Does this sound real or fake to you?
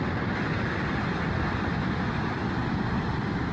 real